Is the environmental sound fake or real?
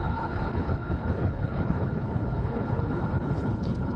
fake